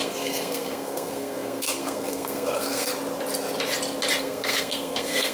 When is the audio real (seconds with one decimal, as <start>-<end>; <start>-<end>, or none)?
2.9-4.2